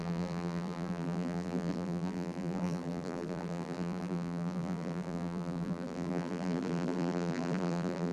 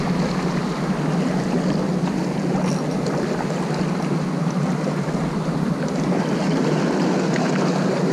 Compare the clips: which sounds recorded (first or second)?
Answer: second